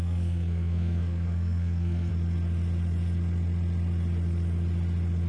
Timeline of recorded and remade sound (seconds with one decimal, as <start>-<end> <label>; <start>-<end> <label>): 0.0-2.1 remade; 2.1-5.3 recorded